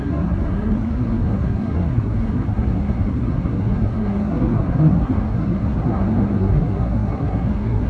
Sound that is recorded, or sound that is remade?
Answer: remade